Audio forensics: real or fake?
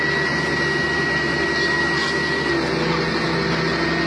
real